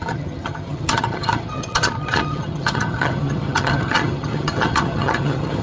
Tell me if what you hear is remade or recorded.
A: remade